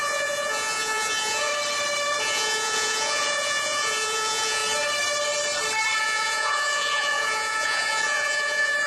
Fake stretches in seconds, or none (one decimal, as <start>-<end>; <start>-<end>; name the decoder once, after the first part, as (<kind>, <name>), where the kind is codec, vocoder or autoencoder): 0.0-1.5 (vocoder, Vocos); 2.2-4.6; 6.0-8.9